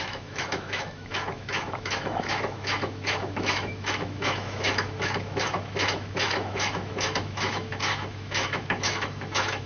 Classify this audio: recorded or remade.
remade